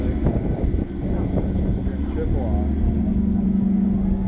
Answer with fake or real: real